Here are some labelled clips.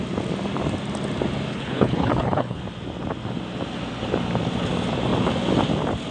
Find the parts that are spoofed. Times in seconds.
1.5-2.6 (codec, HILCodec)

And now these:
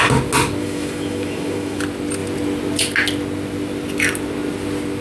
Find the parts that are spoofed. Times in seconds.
0.6-1.8 (autoencoder, DAC-VAE)

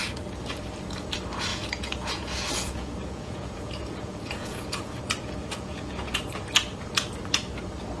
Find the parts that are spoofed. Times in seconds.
1.5-5.0 (vocoder, Vocos); 5.4-6.2

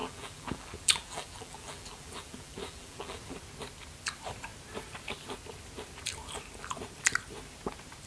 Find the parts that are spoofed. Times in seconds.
0.0-3.4 (vocoder, BigVGAN v2)

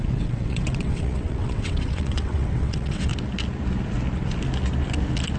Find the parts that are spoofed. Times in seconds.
0.0-3.1 (vocoder, WaveNeXt)

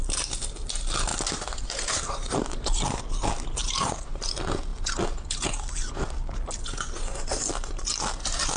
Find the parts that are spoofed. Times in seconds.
1.1-3.0 (vocoder, BigVGAN v2); 3.6-4.2

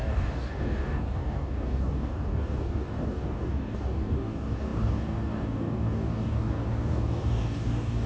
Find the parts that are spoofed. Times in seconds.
0.0-8.1 (codec, DAC)

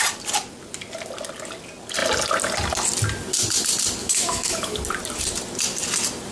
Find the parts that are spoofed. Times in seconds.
4.0-4.8 (autoencoder, DAC-VAE)